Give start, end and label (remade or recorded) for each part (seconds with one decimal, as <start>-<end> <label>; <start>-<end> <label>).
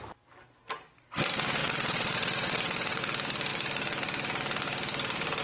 0.0-1.6 recorded; 1.6-3.0 remade; 3.0-5.4 recorded